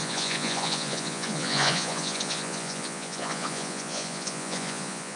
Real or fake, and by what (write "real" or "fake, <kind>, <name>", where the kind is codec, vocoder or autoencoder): fake, vocoder, Vocos